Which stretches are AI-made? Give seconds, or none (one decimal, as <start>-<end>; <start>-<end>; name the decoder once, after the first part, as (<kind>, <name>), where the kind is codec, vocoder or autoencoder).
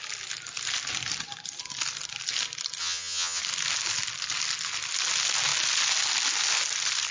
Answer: 2.8-3.4 (vocoder, HiFi-GAN)